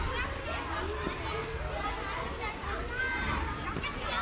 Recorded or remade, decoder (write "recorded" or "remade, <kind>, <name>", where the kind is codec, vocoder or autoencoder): recorded